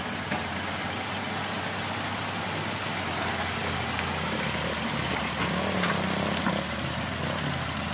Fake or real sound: real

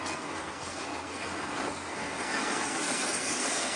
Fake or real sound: fake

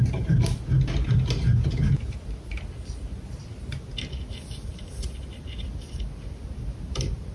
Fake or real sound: real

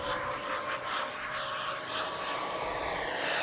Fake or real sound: real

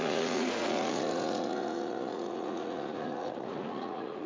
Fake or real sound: fake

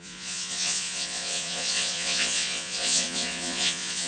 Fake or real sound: fake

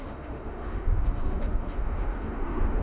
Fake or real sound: fake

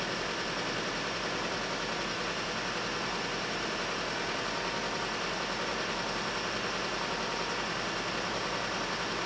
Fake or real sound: real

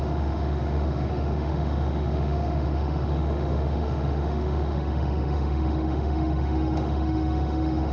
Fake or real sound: fake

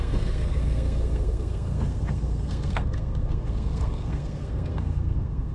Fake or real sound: fake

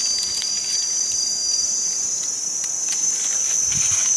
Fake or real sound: real